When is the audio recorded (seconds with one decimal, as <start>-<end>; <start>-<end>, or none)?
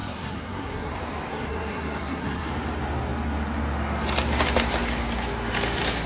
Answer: 0.9-1.3; 2.5-6.1